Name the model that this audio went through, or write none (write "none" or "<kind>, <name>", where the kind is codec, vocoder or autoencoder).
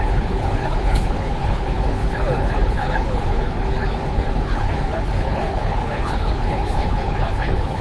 codec, HILCodec